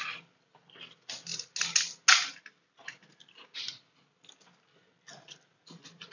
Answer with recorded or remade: recorded